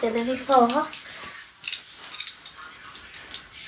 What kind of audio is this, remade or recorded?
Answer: recorded